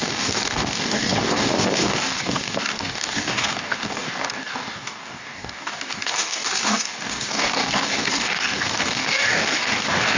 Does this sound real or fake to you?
fake